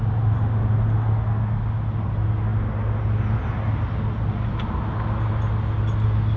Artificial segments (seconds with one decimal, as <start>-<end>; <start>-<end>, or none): none

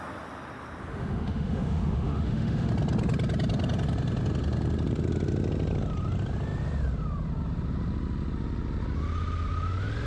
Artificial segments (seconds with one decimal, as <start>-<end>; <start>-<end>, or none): 0.9-2.7

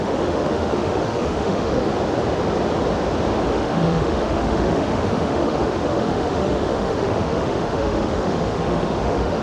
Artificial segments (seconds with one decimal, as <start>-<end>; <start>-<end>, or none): 0.0-1.9; 3.5-9.4

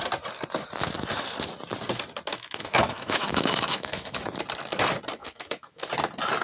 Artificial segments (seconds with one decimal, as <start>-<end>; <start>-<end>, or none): 2.3-4.2; 5.2-5.8

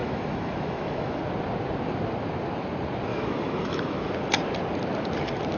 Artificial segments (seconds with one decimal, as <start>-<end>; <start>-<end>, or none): 0.0-1.2; 3.1-4.1

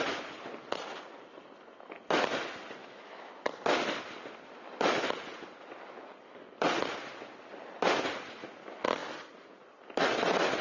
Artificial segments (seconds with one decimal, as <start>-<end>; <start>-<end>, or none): 2.8-3.3